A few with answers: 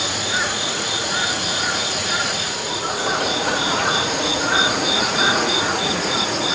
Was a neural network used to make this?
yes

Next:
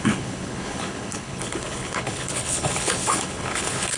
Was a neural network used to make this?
yes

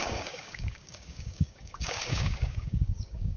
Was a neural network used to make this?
yes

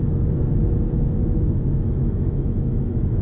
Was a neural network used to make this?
yes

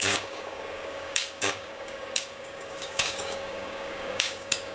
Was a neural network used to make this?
yes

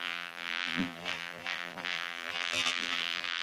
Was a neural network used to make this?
yes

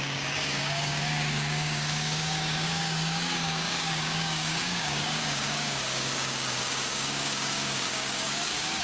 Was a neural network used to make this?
yes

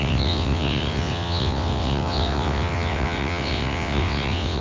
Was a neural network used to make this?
yes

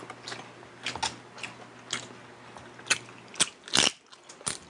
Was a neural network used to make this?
no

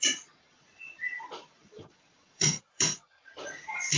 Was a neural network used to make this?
yes